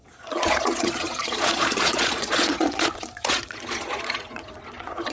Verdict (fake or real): fake